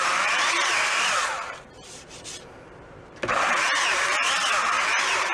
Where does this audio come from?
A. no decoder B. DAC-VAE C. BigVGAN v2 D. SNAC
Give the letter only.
C